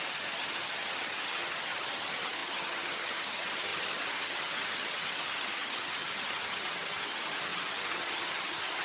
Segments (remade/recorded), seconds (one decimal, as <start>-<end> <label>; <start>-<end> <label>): 0.0-8.8 remade

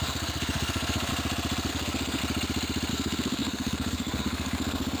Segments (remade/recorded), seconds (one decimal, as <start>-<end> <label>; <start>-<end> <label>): 0.0-1.1 remade; 1.1-1.7 recorded; 1.7-2.2 remade; 2.2-2.9 recorded; 2.9-5.0 remade

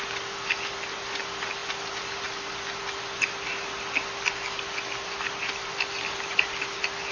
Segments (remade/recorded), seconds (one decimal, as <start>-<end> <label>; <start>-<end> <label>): 0.0-7.1 recorded

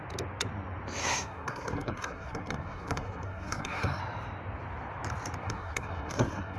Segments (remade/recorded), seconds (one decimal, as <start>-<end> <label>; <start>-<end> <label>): 0.0-1.0 recorded; 1.0-4.0 remade; 4.0-5.4 recorded; 5.4-6.6 remade

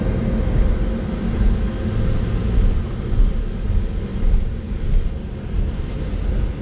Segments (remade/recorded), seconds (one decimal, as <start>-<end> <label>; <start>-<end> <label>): 0.0-6.6 recorded